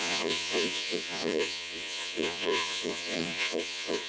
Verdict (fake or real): fake